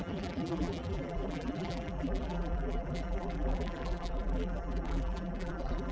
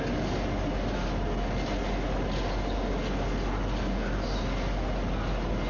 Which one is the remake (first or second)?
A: first